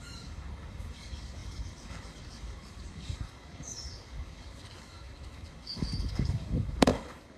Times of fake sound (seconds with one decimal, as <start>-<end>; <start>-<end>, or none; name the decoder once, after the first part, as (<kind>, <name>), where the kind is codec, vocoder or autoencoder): 0.0-7.4 (codec, DAC)

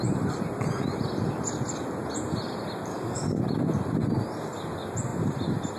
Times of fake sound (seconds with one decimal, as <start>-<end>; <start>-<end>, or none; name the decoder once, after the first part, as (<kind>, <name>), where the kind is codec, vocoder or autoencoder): 2.9-3.4 (codec, DAC)

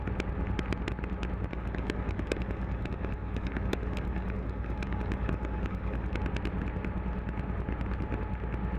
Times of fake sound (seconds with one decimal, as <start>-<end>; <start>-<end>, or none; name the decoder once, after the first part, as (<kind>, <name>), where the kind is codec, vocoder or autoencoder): 1.5-6.1 (codec, DAC)

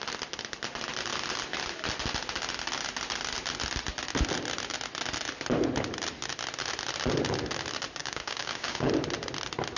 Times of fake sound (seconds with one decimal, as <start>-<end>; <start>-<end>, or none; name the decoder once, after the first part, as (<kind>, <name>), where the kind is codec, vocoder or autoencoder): 8.0-8.9 (codec, DAC)